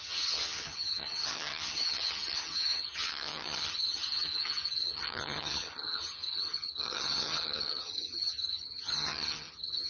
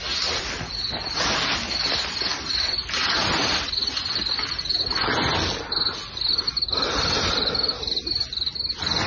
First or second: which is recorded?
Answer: second